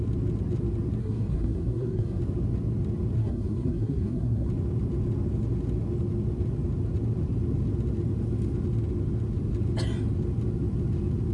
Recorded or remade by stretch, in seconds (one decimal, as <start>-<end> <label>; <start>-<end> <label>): 0.0-1.0 recorded; 1.0-2.2 remade; 2.2-3.2 recorded; 3.2-4.5 remade; 4.5-11.3 recorded